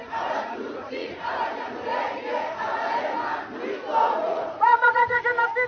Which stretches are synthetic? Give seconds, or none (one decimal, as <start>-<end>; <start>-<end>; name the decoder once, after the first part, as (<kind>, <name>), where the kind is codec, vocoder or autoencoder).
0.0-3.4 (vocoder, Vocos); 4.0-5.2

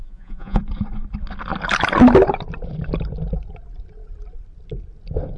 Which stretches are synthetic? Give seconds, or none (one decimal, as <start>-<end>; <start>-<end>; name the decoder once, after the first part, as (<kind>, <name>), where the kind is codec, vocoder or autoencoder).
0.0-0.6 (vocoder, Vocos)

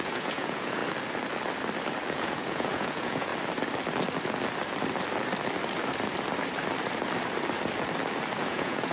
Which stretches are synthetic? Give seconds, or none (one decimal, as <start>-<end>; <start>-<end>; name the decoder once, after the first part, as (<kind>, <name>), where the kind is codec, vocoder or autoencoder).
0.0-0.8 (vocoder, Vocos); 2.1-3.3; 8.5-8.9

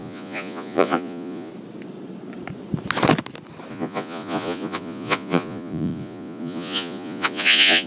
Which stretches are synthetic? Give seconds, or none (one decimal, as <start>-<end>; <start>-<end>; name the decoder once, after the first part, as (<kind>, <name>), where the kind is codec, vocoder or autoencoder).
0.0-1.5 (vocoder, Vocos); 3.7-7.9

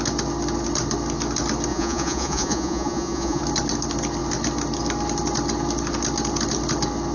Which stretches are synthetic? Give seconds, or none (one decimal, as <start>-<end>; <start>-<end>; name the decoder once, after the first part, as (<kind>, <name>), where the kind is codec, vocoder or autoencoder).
1.7-3.4 (vocoder, Vocos)

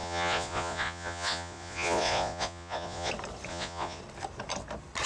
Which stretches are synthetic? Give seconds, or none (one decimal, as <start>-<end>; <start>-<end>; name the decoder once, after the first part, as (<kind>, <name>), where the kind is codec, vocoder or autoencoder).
0.0-3.1 (vocoder, Vocos); 3.5-4.0

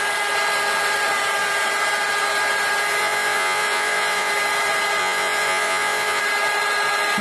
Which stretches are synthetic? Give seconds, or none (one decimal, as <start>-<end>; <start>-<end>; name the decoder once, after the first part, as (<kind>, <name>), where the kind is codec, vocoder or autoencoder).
3.0-4.3 (vocoder, Vocos); 5.0-6.2